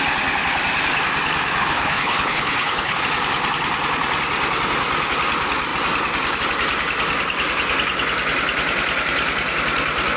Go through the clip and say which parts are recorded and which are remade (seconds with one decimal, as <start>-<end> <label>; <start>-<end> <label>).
0.0-1.6 recorded; 1.6-3.0 remade; 3.0-10.2 recorded